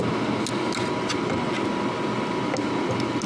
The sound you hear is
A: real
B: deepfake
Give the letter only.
A